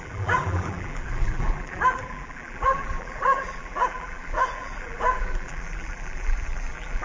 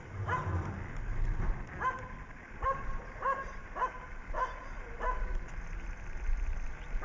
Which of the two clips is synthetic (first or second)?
first